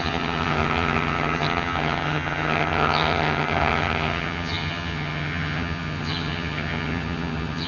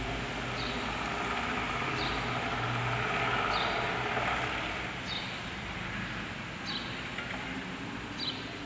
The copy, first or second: first